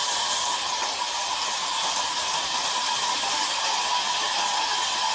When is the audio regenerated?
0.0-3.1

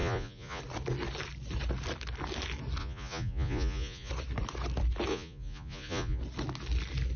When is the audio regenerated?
0.0-0.6; 2.8-4.1; 5.1-6.2

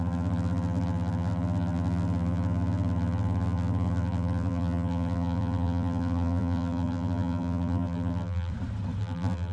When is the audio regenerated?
0.0-8.5; 9.0-9.5

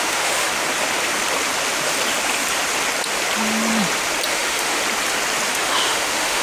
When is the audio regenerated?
0.0-0.5; 4.3-4.8; 5.5-6.4

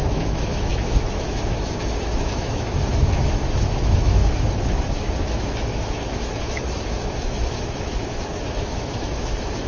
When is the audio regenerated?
0.0-9.7

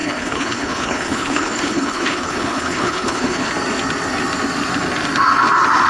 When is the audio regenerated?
0.0-3.5

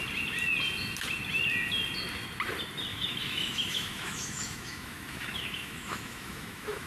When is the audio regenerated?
2.9-6.9